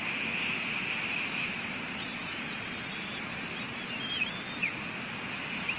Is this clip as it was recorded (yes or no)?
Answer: yes